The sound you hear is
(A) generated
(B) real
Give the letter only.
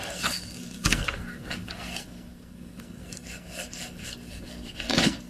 A